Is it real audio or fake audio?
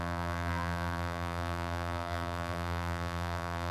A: fake